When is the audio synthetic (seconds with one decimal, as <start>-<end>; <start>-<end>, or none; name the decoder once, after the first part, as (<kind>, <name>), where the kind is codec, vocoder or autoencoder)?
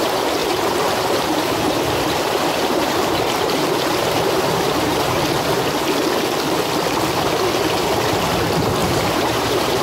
0.4-5.2 (vocoder, BigVGAN v2); 8.8-9.8